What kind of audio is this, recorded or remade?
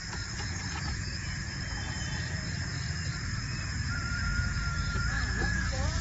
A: remade